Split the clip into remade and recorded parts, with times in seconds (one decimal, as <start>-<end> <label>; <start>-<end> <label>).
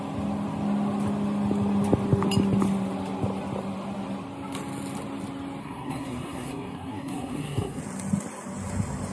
0.0-5.6 recorded; 5.6-7.8 remade; 7.8-9.1 recorded